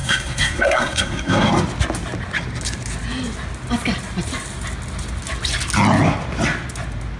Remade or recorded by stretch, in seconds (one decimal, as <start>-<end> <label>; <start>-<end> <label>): 0.0-1.5 remade; 1.5-7.2 recorded